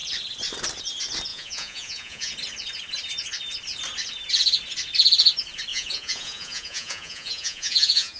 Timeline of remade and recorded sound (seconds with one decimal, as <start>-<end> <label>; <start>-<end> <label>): 0.0-1.3 recorded; 1.3-2.3 remade; 2.3-5.7 recorded; 5.7-8.2 remade